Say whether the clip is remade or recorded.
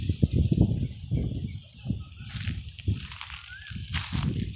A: recorded